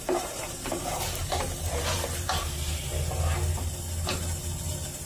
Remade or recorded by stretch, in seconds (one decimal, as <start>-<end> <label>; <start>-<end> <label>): 0.0-1.9 remade; 1.9-5.1 recorded